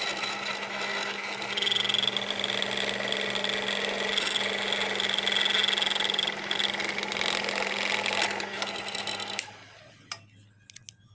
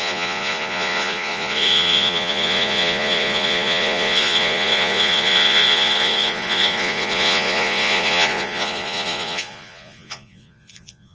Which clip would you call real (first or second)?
first